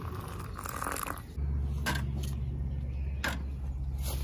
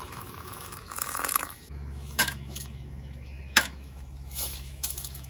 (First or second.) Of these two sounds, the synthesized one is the second